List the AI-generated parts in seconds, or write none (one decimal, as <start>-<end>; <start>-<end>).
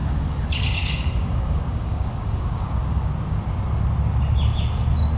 0.0-3.1